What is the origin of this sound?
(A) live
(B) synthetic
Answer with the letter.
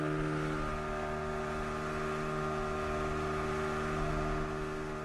A